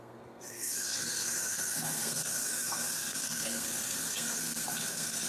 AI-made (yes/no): yes